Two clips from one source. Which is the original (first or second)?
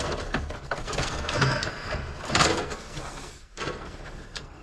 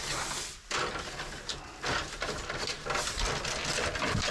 second